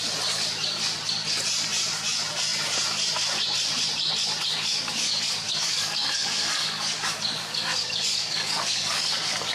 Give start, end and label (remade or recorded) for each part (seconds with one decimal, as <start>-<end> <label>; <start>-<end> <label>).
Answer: 0.0-4.4 recorded; 4.4-9.5 remade